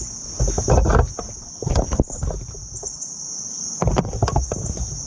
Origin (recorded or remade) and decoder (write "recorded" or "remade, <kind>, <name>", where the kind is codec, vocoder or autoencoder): recorded